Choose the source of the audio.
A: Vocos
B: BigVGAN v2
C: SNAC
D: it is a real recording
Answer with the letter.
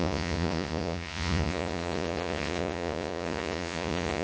A